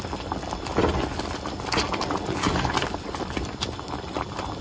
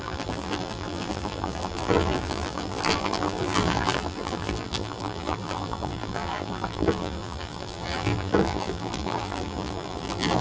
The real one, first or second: first